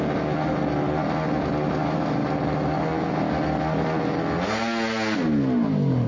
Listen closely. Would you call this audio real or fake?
real